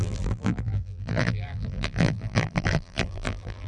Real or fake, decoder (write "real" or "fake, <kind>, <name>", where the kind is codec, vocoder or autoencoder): fake, vocoder, BigVGAN v2